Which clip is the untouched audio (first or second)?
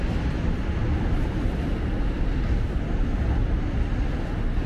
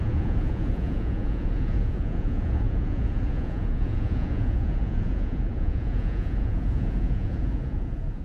first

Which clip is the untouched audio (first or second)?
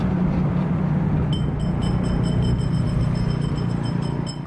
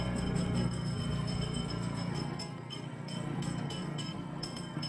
first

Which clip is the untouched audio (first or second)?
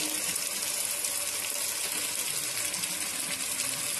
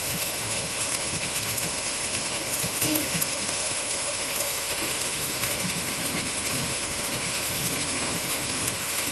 first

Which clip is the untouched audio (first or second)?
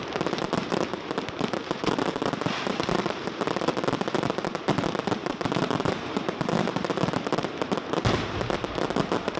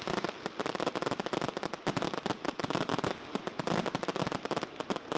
second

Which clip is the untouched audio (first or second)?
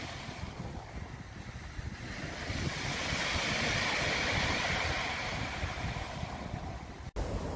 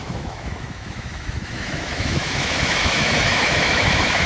first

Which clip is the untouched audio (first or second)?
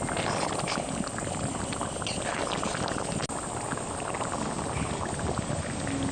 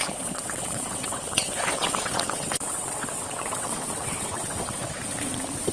first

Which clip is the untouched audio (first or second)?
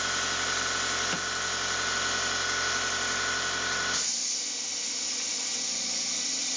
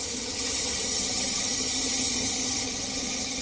first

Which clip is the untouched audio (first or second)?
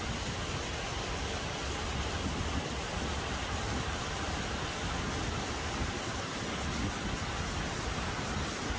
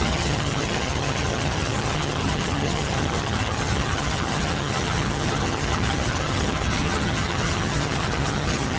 first